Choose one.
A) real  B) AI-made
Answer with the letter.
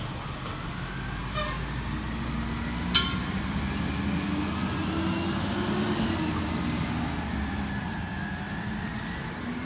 A